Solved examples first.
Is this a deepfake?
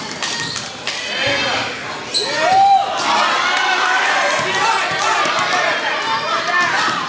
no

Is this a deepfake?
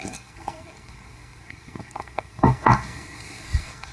yes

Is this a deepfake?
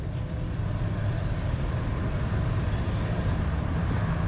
no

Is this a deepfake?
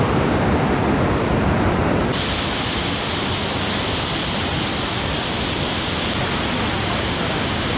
no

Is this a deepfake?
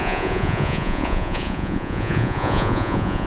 yes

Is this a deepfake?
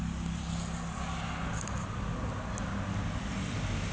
no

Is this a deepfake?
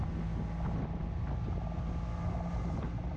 no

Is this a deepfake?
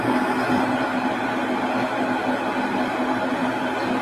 no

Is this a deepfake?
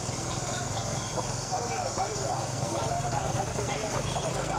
yes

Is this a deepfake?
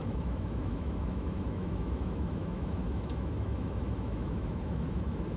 yes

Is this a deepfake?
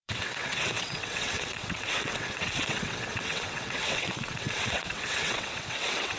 yes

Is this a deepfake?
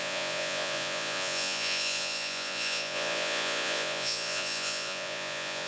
yes